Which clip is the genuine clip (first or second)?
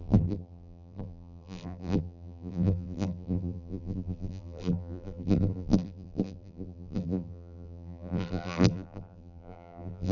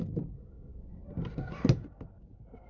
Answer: second